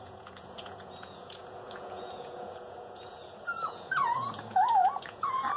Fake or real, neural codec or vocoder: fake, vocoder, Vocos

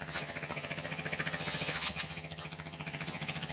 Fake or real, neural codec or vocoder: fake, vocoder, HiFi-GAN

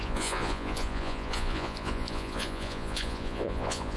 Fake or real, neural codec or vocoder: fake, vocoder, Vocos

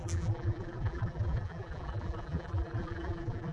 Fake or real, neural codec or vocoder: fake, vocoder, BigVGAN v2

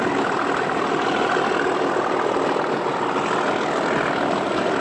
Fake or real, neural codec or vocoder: real